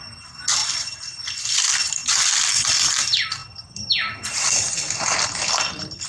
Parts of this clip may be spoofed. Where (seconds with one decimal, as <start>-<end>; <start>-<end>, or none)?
none